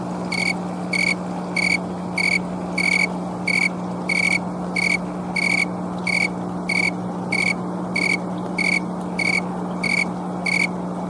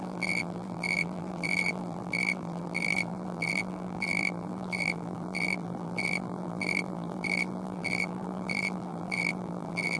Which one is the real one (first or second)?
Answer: first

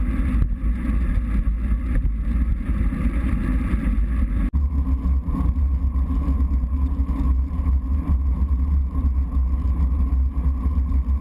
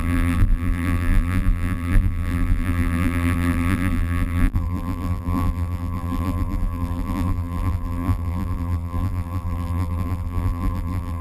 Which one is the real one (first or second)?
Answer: first